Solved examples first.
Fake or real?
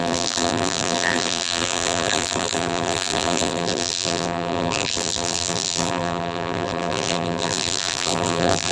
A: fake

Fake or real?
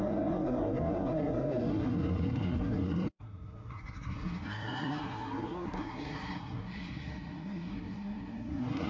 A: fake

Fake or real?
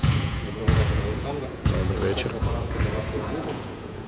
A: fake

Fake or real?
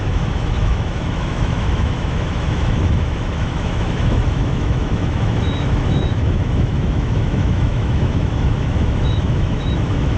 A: fake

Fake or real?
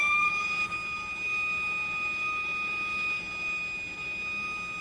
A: real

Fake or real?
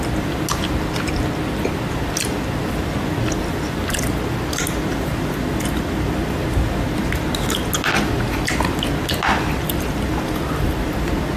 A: real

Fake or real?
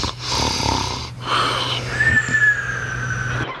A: real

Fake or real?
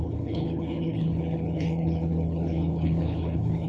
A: fake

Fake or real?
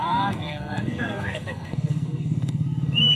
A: fake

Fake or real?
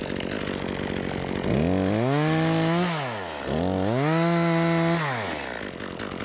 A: real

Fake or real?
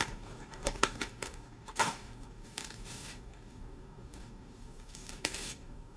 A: fake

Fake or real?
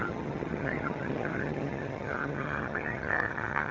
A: fake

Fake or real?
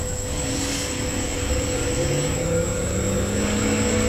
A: fake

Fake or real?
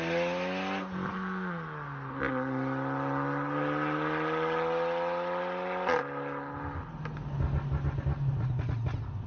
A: real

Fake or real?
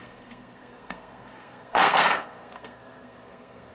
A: fake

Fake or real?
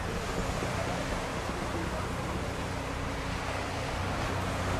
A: real